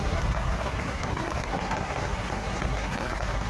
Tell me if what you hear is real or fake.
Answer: fake